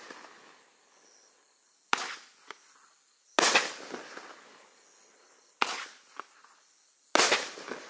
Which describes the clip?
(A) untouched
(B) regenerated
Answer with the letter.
A